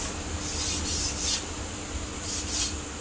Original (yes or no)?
yes